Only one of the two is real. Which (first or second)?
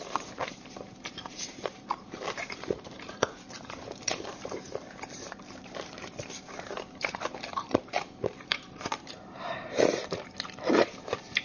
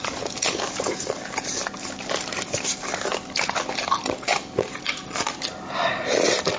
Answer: second